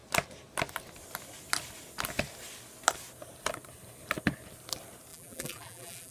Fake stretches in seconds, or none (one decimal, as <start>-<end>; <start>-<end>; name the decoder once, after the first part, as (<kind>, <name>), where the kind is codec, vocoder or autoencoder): 5.1-6.1 (vocoder, BigVGAN v2)